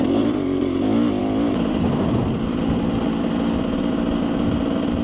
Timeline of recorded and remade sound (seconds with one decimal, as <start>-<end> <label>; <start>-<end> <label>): 0.0-5.0 recorded